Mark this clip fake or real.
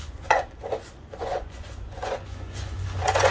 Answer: fake